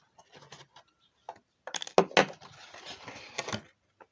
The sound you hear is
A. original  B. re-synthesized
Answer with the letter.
A